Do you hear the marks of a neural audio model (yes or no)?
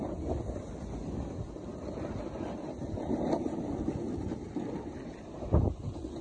no